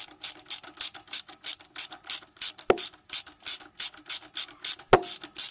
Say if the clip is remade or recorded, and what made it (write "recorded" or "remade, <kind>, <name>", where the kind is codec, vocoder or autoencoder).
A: recorded